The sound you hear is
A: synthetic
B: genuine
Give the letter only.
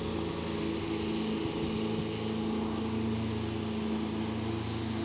B